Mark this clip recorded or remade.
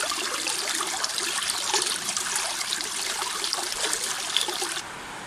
recorded